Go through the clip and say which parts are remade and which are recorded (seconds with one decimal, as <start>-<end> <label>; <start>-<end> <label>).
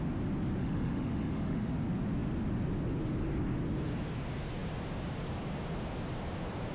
0.0-0.6 recorded; 0.6-1.7 remade; 1.7-6.7 recorded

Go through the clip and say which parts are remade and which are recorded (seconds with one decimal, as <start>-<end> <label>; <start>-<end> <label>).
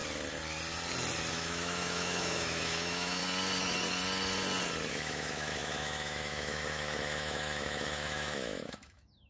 0.0-1.3 recorded; 1.3-3.2 remade; 3.2-4.9 recorded; 4.9-9.3 remade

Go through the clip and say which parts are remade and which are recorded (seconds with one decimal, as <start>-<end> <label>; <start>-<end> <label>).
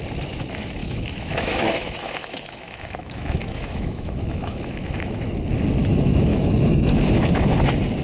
0.0-0.8 recorded; 0.8-5.3 remade; 5.3-6.3 recorded; 6.3-6.9 remade; 6.9-8.0 recorded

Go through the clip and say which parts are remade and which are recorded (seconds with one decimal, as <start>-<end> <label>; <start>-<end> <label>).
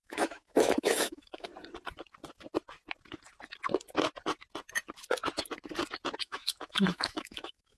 0.0-1.5 remade; 1.5-6.2 recorded; 6.2-7.8 remade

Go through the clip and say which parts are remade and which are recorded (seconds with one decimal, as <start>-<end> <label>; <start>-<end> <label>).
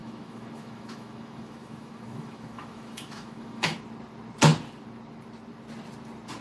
0.0-3.8 remade; 3.8-6.4 recorded